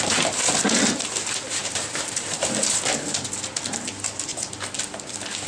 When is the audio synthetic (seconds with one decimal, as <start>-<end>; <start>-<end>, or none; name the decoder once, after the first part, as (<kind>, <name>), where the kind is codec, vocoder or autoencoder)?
none